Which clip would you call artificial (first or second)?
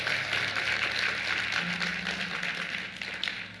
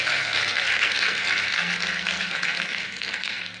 second